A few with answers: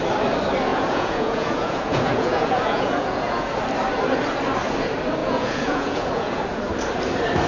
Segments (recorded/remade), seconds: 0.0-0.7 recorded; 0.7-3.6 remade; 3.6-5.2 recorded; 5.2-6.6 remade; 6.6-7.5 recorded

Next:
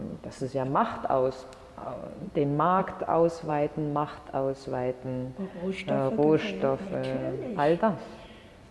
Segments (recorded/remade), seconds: 0.0-8.7 recorded